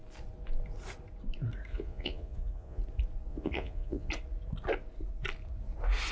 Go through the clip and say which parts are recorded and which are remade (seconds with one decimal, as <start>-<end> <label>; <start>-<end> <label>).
0.0-1.7 recorded; 1.7-2.8 remade; 2.8-3.3 recorded; 3.3-4.1 remade; 4.1-6.1 recorded